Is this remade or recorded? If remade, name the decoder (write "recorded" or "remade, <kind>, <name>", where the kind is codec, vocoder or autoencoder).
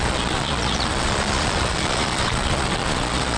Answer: remade, vocoder, Vocos